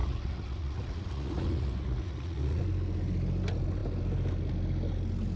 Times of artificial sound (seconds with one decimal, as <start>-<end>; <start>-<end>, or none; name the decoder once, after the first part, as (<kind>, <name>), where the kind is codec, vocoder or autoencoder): 0.0-2.6 (vocoder, Vocos)